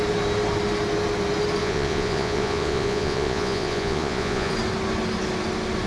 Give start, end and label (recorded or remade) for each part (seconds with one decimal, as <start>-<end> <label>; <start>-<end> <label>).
0.0-1.6 recorded; 1.6-4.5 remade; 4.5-5.9 recorded